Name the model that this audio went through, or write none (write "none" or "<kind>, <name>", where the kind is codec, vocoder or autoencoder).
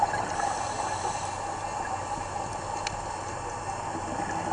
none